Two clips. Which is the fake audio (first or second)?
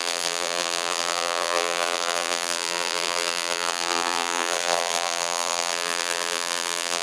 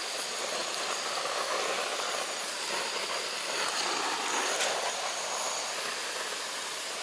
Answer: first